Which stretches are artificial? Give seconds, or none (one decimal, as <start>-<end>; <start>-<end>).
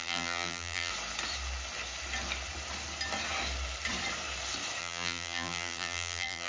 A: 0.0-0.9; 4.8-6.5